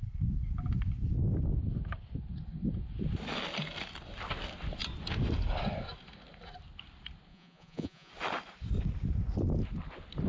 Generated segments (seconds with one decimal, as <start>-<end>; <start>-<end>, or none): 7.3-8.1